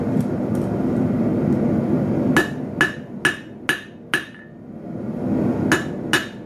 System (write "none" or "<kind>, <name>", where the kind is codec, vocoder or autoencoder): none